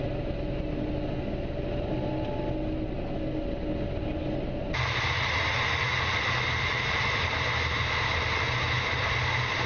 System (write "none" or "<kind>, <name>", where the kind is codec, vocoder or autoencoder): none